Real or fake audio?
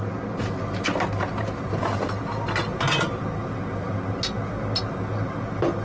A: real